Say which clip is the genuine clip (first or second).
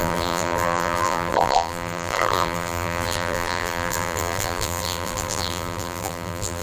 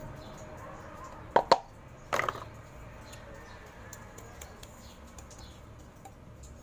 second